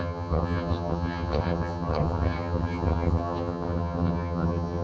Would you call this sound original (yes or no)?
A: no